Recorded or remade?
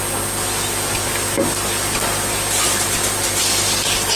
recorded